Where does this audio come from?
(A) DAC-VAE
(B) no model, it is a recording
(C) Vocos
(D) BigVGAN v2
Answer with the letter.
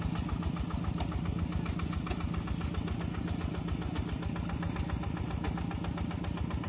B